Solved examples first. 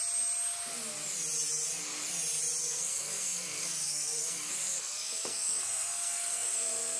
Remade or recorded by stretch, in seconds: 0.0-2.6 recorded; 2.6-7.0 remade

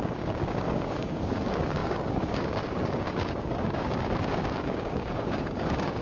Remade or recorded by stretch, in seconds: 0.0-6.0 remade